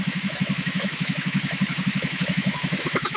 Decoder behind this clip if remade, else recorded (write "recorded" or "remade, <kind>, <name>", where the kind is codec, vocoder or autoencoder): remade, autoencoder, DAC-VAE